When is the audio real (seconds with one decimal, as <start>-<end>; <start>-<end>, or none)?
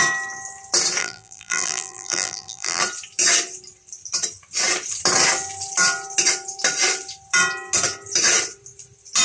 0.0-1.0; 2.8-9.2